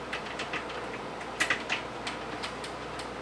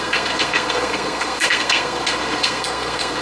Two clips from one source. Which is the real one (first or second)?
first